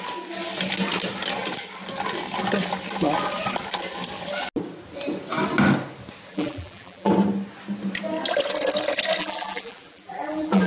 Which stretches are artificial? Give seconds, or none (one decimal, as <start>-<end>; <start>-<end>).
6.3-7.1; 9.2-10.7